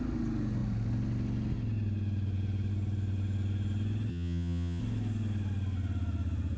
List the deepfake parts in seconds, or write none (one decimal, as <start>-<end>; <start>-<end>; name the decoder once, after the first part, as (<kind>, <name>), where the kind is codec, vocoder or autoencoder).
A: 4.1-4.8 (vocoder, HiFi-GAN)